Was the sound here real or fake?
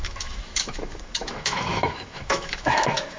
fake